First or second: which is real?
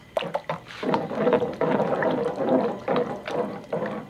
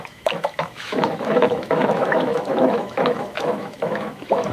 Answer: first